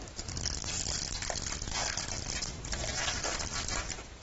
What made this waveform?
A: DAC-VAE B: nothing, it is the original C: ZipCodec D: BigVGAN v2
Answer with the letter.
B